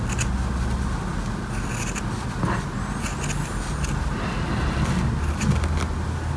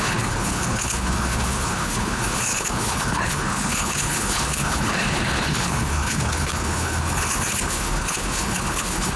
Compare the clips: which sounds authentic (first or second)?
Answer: first